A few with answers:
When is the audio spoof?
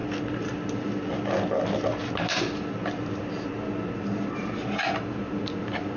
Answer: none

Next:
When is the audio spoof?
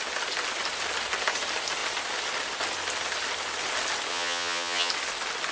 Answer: 4.1-4.9 (vocoder, HiFi-GAN)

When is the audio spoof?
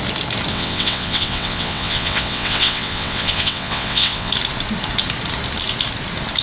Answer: 0.5-4.3 (vocoder, WaveNeXt)